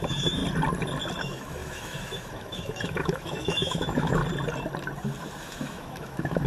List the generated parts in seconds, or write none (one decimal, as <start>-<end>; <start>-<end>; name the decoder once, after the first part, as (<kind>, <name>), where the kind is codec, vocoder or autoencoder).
0.0-0.4 (autoencoder, DAC-VAE); 1.2-4.2; 5.4-6.5